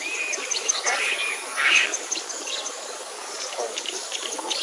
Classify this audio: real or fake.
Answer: fake